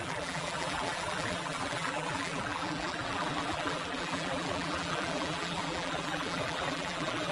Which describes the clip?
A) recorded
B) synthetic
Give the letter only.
B